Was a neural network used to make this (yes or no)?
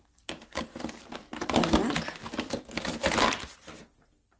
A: no